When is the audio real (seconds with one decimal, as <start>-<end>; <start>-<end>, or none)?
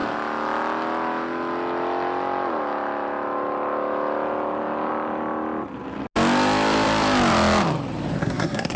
0.0-8.2